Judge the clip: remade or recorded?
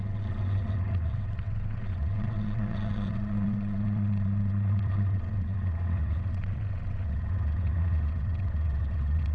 remade